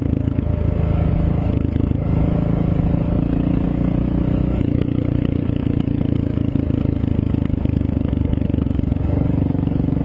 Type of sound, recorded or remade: remade